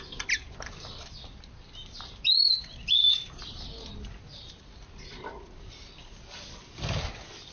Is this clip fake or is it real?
real